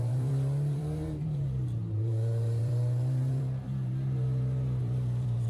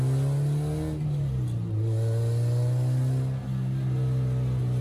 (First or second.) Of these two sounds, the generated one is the first